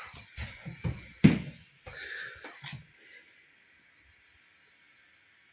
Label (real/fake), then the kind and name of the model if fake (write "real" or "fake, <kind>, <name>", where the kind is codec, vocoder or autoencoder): real